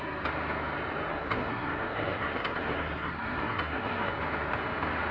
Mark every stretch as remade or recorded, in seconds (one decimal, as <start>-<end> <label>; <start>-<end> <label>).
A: 0.0-1.1 recorded; 1.1-4.1 remade; 4.1-5.1 recorded